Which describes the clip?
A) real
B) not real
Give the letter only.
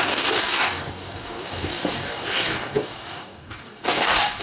B